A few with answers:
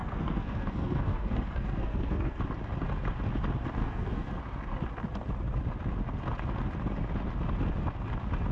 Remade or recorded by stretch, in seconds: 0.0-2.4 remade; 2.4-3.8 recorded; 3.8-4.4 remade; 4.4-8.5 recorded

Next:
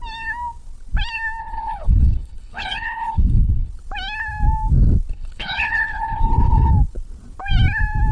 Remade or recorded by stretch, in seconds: 0.0-1.4 recorded; 1.4-3.7 remade; 3.7-5.1 recorded; 5.1-6.7 remade; 6.7-8.1 recorded

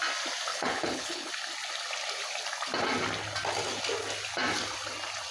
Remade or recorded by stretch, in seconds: 0.0-0.5 recorded; 0.5-1.3 remade; 1.3-5.3 recorded

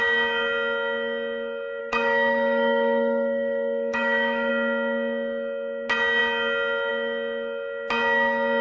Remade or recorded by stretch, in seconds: 0.0-1.8 recorded; 1.8-4.5 remade; 4.5-8.6 recorded

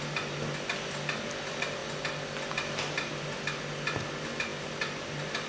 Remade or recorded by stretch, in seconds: 0.0-5.5 recorded